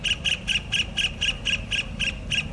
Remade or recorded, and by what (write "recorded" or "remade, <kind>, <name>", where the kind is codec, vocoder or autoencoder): recorded